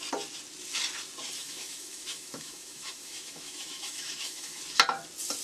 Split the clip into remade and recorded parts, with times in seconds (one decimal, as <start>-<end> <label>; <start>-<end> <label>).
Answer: 0.0-1.4 recorded; 1.4-4.6 remade; 4.6-5.4 recorded